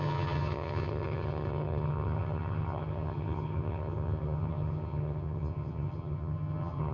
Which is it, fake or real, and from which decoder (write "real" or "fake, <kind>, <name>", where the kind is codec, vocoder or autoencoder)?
fake, vocoder, HiFi-GAN